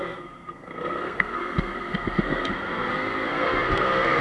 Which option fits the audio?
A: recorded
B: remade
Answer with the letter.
B